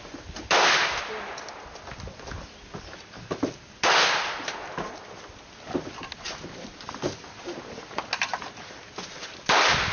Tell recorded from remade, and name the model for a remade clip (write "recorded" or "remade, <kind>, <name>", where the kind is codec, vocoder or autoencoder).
recorded